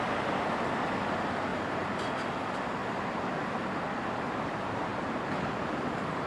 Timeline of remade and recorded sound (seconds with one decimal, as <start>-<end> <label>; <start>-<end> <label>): 0.0-1.5 recorded; 1.5-2.1 remade; 2.1-4.9 recorded; 4.9-6.3 remade